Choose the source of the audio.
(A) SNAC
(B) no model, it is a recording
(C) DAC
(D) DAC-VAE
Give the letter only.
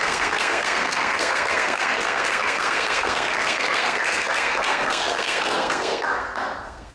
A